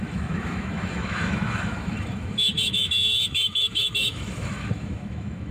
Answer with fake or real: fake